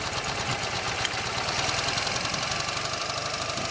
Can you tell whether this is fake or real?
real